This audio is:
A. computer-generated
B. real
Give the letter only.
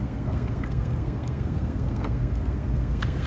A